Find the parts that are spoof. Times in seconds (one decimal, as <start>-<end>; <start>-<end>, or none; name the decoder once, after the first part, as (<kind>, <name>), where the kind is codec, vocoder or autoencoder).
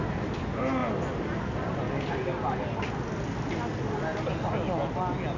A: none